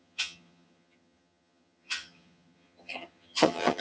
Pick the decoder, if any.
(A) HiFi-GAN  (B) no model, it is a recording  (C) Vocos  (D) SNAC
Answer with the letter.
A